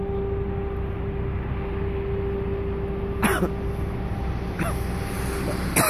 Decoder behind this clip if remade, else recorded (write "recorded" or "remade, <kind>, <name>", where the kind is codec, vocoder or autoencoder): recorded